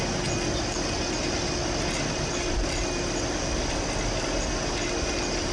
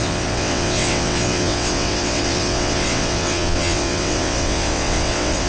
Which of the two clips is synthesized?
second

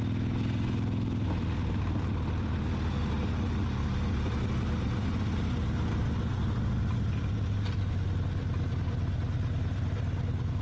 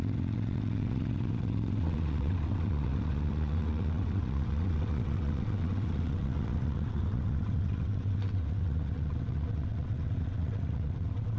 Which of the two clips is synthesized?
second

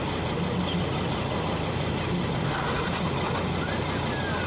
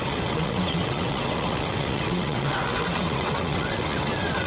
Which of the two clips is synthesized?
second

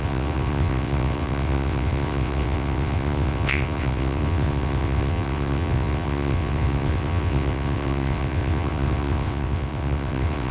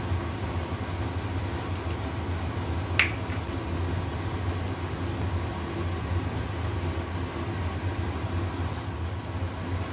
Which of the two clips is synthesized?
first